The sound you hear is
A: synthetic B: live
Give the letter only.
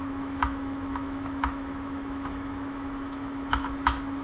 A